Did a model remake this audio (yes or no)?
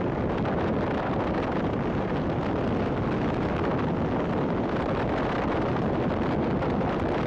no